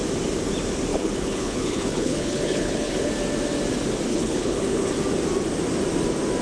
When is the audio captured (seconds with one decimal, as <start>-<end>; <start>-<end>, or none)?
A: 0.0-0.9; 3.1-4.1; 4.9-6.4

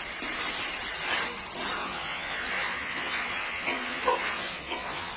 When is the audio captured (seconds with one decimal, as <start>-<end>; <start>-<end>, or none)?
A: 0.0-1.8

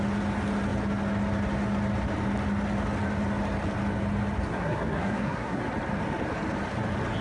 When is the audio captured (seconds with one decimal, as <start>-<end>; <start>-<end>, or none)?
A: 0.0-4.5; 5.6-7.2

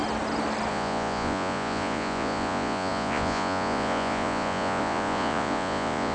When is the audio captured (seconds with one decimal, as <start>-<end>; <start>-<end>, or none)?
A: 0.0-0.7